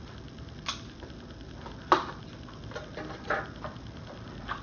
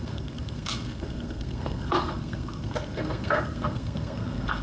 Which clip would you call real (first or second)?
first